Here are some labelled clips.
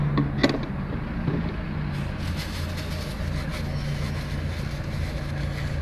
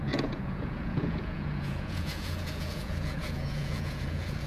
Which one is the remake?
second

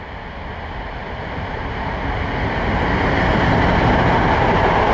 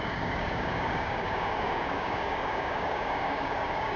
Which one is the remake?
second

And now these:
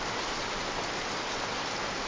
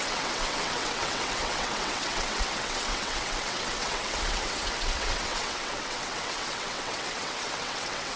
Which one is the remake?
second